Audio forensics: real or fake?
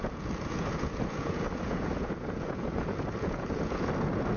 fake